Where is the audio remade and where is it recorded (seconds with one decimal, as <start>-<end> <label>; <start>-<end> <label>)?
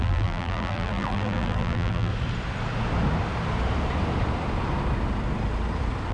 0.0-2.1 remade; 2.1-6.1 recorded